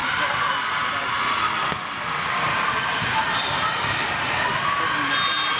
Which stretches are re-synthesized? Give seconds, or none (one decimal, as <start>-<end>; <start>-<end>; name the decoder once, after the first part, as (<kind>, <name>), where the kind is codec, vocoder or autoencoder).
none